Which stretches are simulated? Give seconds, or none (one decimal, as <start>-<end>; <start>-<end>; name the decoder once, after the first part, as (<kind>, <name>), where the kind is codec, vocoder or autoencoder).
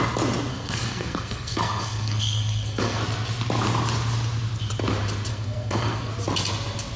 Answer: 0.5-3.0 (codec, SNAC); 5.3-6.1